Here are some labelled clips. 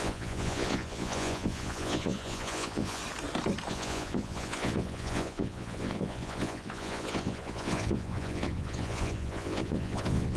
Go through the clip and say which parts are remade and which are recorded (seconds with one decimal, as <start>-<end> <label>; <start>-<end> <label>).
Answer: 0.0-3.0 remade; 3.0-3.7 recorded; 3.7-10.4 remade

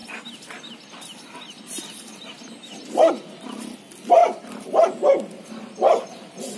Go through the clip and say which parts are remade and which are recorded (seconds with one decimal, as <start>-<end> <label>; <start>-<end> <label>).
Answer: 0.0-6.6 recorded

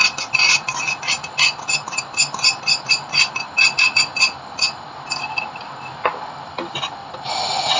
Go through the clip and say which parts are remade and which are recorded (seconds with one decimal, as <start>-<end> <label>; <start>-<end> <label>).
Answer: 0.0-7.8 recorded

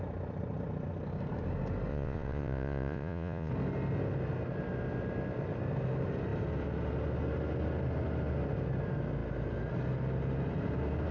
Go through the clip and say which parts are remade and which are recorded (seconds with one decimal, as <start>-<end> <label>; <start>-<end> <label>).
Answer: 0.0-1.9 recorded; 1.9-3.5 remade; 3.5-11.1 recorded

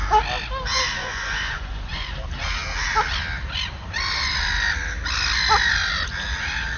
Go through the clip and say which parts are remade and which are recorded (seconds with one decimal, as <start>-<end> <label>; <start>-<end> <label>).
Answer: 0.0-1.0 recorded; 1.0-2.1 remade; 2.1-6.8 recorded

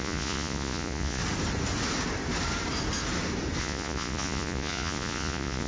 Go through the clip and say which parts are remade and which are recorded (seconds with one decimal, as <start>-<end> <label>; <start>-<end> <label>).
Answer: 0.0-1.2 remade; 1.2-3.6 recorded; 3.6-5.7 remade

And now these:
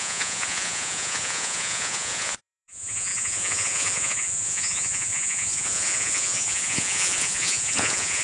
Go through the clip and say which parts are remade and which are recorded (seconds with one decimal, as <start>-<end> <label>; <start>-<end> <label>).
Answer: 0.0-8.2 remade

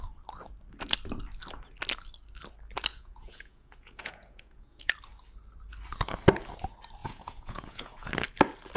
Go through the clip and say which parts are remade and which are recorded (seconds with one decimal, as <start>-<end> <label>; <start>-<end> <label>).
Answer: 0.0-2.9 recorded; 2.9-4.9 remade; 4.9-7.0 recorded; 7.0-8.1 remade; 8.1-8.8 recorded